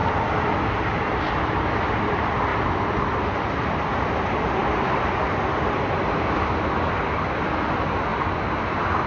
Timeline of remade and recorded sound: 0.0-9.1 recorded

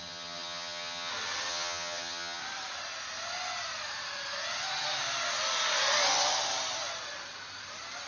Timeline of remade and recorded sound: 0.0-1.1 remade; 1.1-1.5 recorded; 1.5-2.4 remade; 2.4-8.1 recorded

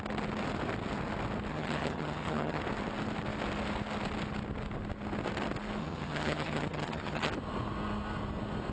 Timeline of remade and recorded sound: 0.0-1.5 recorded; 1.5-2.6 remade; 2.6-5.8 recorded; 5.8-7.3 remade; 7.3-8.7 recorded

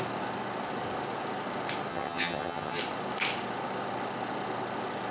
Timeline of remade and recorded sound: 0.0-1.9 recorded; 1.9-2.8 remade; 2.8-5.1 recorded